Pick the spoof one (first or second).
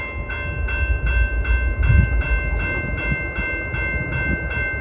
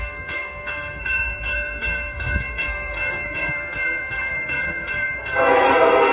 second